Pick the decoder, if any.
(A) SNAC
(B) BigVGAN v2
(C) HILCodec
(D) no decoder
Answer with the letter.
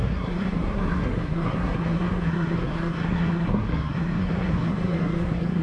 A